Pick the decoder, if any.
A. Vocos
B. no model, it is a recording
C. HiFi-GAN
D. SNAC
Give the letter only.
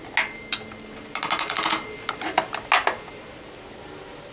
B